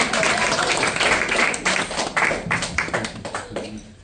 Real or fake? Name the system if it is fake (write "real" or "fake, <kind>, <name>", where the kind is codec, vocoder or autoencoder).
real